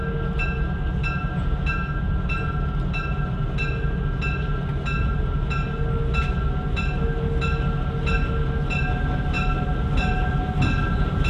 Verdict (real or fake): real